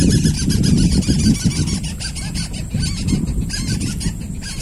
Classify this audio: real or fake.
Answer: real